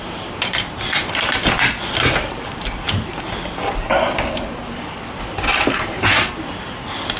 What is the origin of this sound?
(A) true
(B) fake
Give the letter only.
A